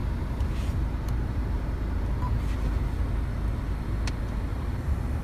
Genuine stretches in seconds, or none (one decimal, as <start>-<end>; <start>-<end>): 2.0-4.5